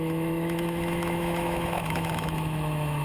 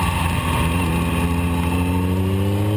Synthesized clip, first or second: first